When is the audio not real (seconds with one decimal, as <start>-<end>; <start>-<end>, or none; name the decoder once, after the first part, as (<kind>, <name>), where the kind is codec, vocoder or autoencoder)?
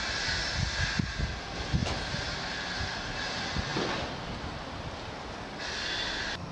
none